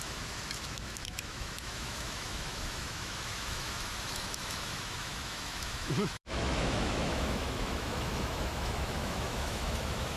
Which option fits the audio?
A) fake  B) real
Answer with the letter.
A